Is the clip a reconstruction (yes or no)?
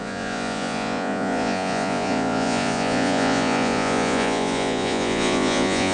yes